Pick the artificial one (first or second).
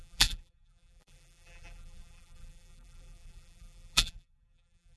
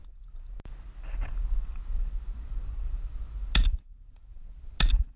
first